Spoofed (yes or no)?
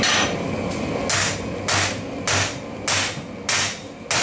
no